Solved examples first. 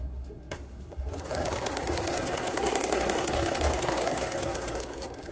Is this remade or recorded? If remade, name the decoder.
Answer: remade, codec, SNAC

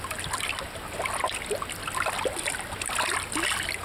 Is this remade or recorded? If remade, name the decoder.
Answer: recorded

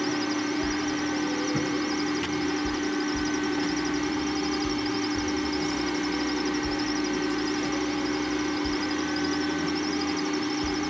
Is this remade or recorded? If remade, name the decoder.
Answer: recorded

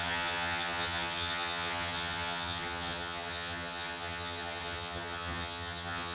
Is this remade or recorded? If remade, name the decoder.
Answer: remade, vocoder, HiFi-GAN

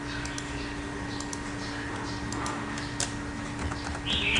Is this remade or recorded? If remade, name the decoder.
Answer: recorded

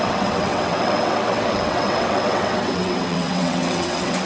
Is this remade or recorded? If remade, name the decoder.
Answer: remade, vocoder, WaveNeXt